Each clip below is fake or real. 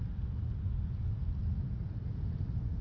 real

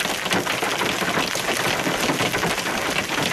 real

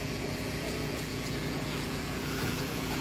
fake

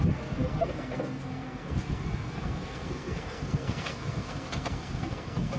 fake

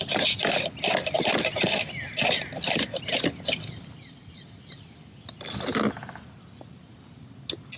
real